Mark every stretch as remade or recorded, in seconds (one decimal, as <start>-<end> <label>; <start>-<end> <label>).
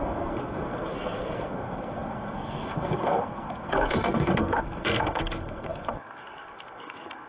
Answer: 0.0-7.3 remade